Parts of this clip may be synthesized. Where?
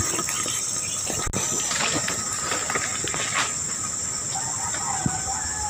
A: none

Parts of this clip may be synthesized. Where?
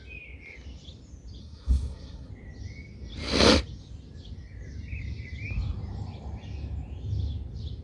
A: 1.4-2.3 (codec, SNAC)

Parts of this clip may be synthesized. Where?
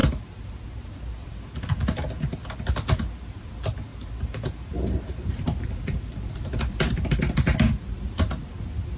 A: 0.0-0.8 (vocoder, BigVGAN v2); 3.9-6.6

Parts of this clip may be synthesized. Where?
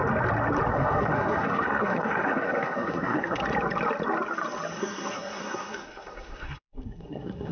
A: 0.7-3.4 (codec, SNAC); 4.8-7.5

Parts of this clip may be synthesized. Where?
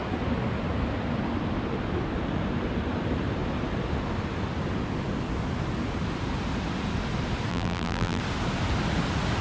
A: 7.5-8.2 (vocoder, BigVGAN v2)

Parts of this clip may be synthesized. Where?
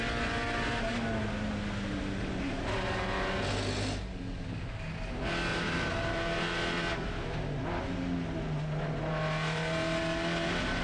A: 5.5-6.2 (vocoder, BigVGAN v2)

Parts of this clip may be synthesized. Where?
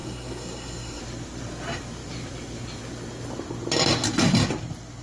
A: 0.0-1.0 (codec, SNAC)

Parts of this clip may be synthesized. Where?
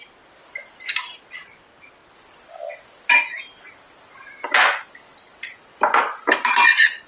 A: none